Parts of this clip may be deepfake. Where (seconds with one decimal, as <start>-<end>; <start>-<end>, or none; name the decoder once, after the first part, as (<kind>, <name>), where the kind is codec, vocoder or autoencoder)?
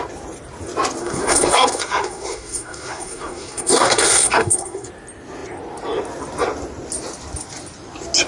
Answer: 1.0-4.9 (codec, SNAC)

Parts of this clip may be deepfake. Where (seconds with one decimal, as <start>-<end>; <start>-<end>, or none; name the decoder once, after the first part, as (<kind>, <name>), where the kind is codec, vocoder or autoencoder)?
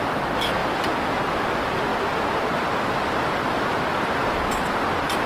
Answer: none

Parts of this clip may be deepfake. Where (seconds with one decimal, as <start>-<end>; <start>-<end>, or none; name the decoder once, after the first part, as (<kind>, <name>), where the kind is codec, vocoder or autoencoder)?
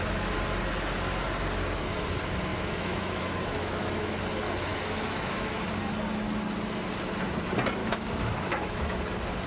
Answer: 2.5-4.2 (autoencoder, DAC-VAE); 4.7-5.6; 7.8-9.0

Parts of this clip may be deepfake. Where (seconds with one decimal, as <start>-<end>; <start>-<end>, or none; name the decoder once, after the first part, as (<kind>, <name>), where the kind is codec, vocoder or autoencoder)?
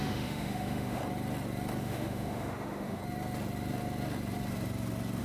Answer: 0.0-1.0 (autoencoder, DAC-VAE); 1.8-3.0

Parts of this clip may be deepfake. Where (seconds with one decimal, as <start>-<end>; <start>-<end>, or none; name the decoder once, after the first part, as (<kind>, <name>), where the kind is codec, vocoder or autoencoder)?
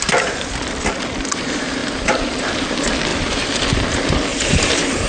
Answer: 4.3-5.1 (vocoder, BigVGAN v2)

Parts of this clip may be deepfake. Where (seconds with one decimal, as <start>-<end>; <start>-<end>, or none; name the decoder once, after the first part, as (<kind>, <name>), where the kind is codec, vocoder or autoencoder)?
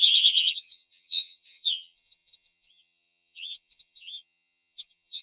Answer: 0.0-5.2 (vocoder, HiFi-GAN)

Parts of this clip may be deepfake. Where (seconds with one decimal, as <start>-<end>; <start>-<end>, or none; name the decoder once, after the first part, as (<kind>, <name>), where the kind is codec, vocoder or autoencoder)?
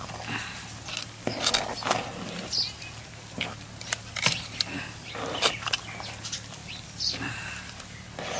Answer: none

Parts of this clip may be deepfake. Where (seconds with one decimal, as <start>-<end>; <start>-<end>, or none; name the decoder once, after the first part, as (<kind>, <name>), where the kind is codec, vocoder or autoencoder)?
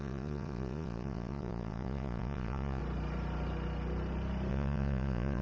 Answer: 0.0-2.8 (vocoder, Vocos); 4.5-5.4